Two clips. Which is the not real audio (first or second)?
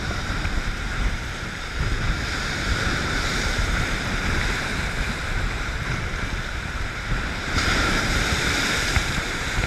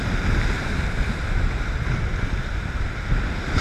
first